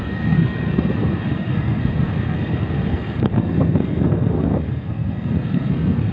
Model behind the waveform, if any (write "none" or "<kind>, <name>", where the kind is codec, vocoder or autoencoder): codec, SNAC